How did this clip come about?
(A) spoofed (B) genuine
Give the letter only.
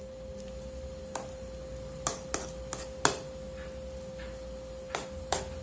B